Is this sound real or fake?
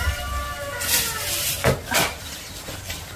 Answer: real